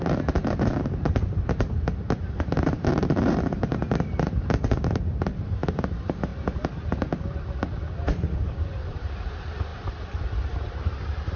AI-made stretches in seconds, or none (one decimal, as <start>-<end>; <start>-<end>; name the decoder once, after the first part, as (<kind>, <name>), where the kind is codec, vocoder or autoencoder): 0.0-6.3 (vocoder, BigVGAN v2); 8.4-11.4